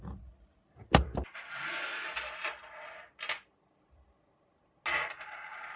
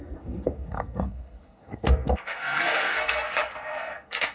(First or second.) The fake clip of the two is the second